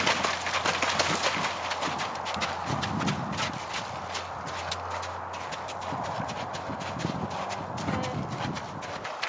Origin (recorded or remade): recorded